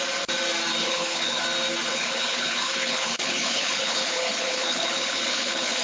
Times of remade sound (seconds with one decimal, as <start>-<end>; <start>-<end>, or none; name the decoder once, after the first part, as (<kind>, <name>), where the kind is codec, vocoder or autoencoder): 0.8-1.4 (codec, HILCodec); 1.9-5.8